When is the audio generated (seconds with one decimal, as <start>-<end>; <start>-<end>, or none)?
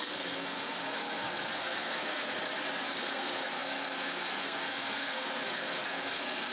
0.0-2.3; 3.0-6.5